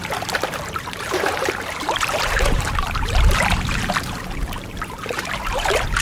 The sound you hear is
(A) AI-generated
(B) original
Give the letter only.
A